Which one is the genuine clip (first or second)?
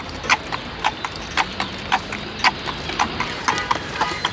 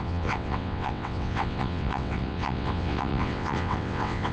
first